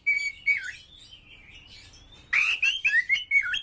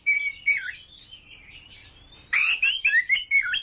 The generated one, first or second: second